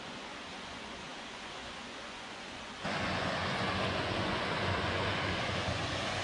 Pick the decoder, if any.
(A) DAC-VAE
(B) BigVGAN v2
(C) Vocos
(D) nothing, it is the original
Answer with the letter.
C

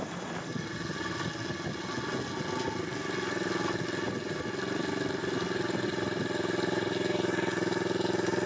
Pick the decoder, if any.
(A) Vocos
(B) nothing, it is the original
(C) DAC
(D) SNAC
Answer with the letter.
B